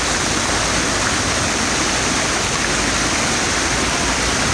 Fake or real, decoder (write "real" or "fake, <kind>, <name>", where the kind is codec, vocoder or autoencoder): real